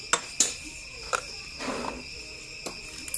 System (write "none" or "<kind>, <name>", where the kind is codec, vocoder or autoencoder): none